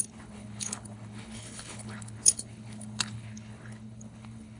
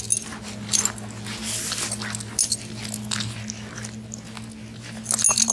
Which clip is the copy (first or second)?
first